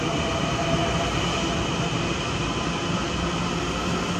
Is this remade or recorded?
recorded